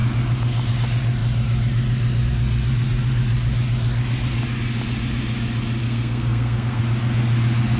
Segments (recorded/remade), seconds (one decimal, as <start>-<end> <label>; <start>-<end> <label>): 0.0-5.8 recorded; 5.8-6.8 remade; 6.8-7.8 recorded